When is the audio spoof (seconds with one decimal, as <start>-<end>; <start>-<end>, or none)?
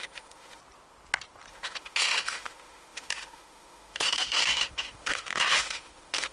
0.0-0.6; 1.5-6.3